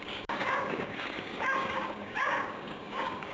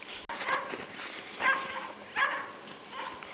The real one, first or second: second